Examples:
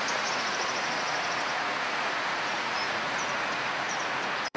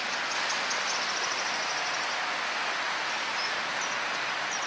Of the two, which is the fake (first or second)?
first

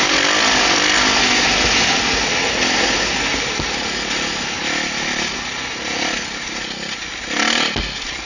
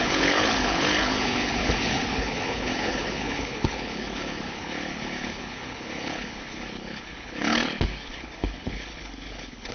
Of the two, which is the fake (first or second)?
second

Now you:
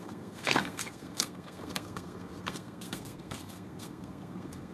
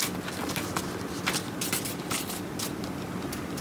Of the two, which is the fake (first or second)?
first